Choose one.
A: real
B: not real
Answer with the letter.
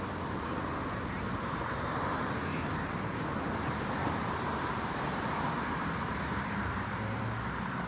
B